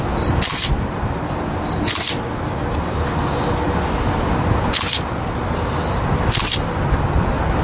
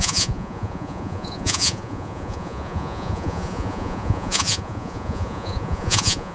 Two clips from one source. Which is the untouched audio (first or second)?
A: first